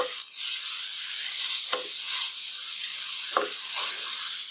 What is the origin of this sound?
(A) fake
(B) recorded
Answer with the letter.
B